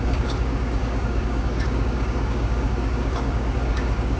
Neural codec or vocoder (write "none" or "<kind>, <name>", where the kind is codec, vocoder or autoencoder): codec, DAC